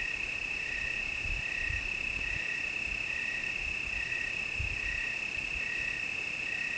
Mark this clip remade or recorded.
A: recorded